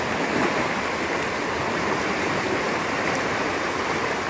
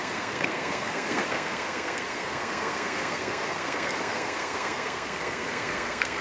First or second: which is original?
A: first